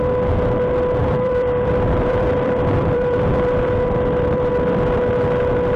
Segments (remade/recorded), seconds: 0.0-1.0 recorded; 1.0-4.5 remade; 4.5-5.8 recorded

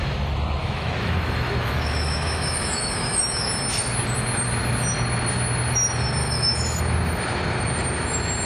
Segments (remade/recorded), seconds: 0.0-0.6 recorded; 0.6-3.5 remade; 3.5-6.2 recorded; 6.2-6.8 remade; 6.8-8.5 recorded

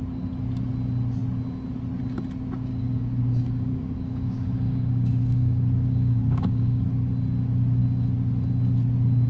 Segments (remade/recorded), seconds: 0.0-2.7 recorded; 2.7-6.8 remade; 6.8-9.3 recorded

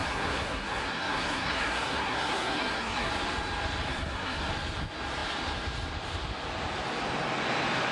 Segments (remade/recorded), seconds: 0.0-3.1 remade; 3.1-3.9 recorded; 3.9-4.5 remade; 4.5-7.9 recorded

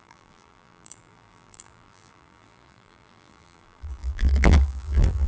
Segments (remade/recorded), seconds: 0.0-5.3 remade